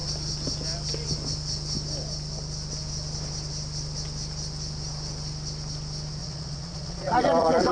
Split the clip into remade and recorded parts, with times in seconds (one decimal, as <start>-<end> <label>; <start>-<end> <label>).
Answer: 0.0-6.2 recorded; 6.2-7.7 remade